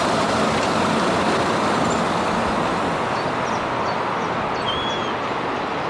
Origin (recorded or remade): recorded